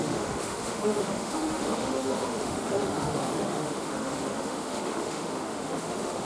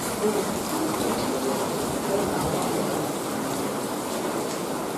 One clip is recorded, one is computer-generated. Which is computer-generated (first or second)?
first